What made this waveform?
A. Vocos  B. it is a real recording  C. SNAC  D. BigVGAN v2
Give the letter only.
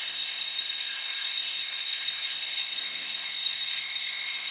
C